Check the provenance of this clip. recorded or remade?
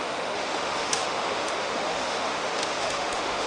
remade